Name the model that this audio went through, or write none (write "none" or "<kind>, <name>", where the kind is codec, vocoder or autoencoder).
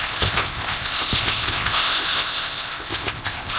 codec, ZipCodec